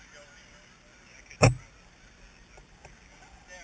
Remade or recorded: recorded